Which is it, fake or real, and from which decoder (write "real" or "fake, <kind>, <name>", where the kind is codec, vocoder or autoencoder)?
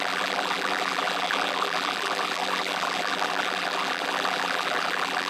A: fake, vocoder, BigVGAN v2